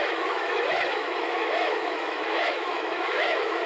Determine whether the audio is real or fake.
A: fake